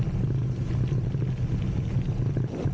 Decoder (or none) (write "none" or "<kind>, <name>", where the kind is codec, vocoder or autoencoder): none